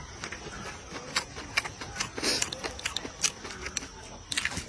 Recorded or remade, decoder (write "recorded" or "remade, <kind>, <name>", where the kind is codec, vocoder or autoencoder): recorded